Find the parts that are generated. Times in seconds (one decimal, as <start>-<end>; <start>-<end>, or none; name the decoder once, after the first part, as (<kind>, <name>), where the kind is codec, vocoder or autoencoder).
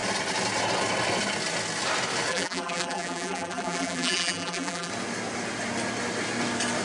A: 2.3-4.9 (vocoder, BigVGAN v2)